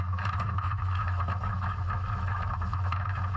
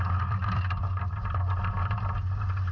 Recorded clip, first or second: second